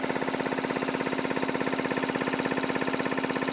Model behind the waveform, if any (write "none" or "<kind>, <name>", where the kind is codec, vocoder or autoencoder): none